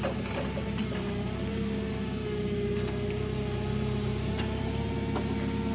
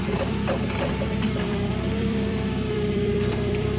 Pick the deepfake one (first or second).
second